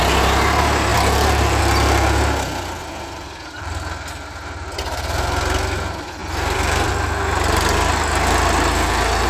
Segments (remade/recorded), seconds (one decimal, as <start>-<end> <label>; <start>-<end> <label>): 0.0-0.9 recorded; 0.9-1.6 remade; 1.6-2.8 recorded; 2.8-3.7 remade; 3.7-6.2 recorded; 6.2-6.9 remade; 6.9-9.3 recorded